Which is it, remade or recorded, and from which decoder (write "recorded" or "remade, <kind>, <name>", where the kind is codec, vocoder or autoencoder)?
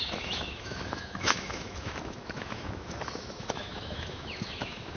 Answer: remade, autoencoder, DAC-VAE